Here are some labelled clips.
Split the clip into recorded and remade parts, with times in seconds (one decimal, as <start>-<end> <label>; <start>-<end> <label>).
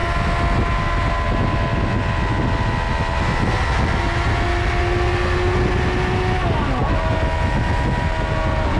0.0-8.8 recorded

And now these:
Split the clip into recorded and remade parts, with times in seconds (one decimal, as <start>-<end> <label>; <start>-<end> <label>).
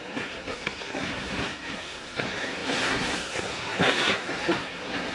0.0-5.1 remade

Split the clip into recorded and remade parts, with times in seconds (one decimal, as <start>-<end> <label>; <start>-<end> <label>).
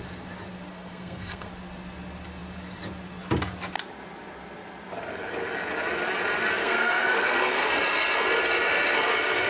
0.0-0.7 recorded; 0.7-1.5 remade; 1.5-6.6 recorded; 6.6-7.7 remade; 7.7-9.5 recorded